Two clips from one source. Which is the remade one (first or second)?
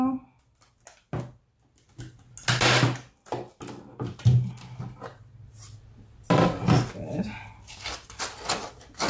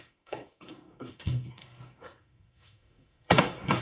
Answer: second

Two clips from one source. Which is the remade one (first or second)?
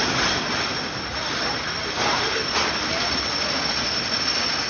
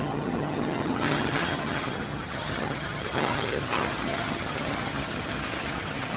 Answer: second